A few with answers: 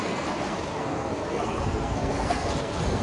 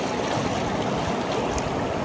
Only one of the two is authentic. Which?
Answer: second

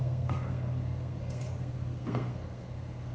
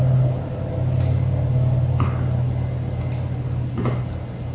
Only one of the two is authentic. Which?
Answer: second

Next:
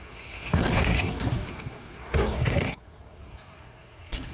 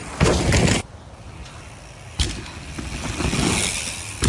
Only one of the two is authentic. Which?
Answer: second